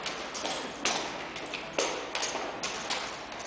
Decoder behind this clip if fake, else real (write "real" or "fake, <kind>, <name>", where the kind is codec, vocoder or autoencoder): real